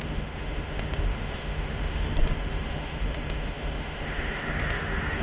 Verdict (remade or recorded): remade